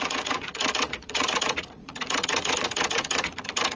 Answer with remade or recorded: remade